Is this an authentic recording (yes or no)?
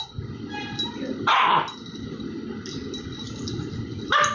yes